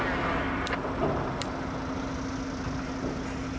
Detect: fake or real real